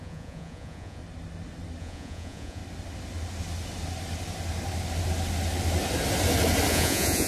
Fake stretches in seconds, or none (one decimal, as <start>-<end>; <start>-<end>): 0.0-1.0; 1.8-2.6; 6.7-7.3

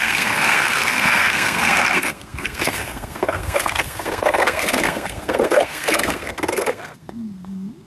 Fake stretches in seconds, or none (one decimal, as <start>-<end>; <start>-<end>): 0.0-7.9